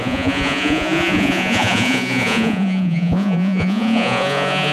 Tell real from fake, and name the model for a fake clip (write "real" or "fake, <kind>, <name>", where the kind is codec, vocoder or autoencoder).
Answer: fake, vocoder, Vocos